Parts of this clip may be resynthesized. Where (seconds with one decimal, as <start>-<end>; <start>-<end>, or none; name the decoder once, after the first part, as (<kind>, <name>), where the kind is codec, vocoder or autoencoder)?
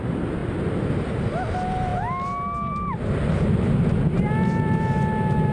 none